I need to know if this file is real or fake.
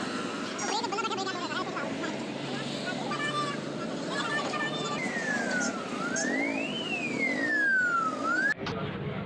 real